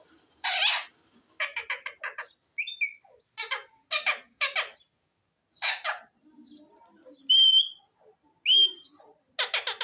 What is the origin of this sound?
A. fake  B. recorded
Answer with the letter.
B